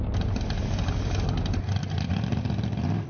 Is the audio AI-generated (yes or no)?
no